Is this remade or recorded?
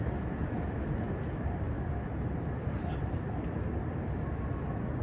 recorded